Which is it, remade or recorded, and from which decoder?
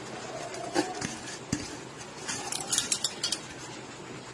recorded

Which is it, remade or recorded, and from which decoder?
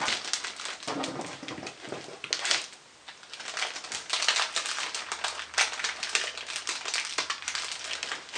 recorded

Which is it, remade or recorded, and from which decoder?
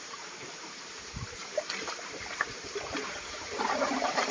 remade, vocoder, BigVGAN v2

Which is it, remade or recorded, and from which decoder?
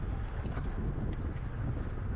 recorded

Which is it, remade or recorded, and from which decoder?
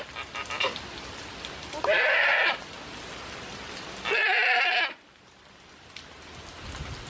recorded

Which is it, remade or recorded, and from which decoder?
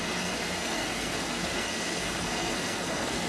remade, codec, SNAC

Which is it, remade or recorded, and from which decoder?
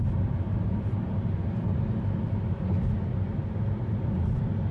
recorded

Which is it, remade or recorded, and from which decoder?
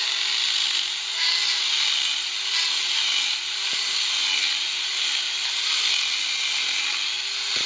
recorded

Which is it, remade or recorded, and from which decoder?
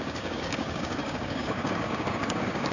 remade, codec, DAC